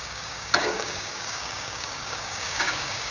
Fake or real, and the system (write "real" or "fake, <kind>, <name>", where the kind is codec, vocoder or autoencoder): fake, codec, DAC